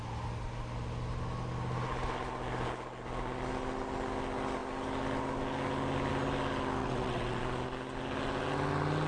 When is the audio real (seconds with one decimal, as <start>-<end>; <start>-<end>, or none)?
0.0-6.8; 7.4-9.1